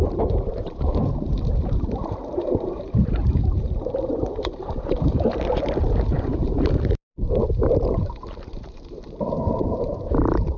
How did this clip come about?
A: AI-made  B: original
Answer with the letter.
A